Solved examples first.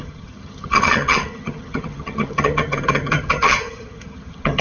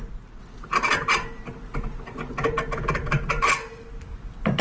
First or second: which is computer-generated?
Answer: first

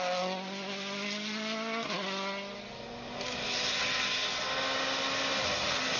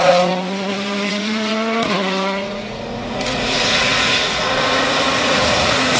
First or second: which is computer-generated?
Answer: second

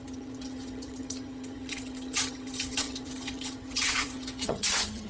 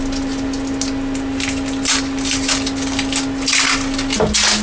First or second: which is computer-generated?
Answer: first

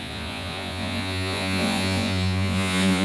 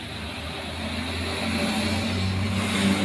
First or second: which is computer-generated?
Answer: first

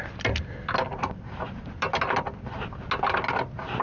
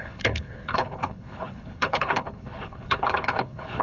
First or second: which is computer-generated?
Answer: second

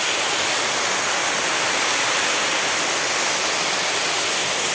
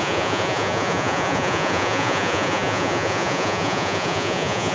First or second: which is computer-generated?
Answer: second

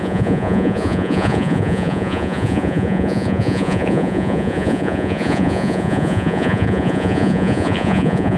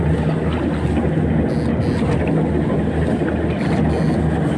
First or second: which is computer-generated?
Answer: first